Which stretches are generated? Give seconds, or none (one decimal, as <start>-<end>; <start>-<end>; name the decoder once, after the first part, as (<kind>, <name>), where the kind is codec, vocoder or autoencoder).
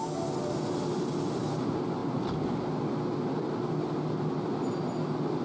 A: none